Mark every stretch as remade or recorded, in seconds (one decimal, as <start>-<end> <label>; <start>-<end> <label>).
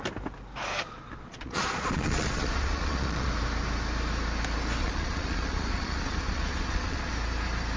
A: 0.0-0.7 recorded; 0.7-3.3 remade; 3.3-4.8 recorded; 4.8-7.1 remade; 7.1-7.8 recorded